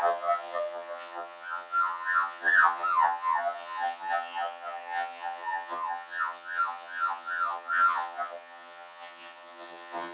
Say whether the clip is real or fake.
fake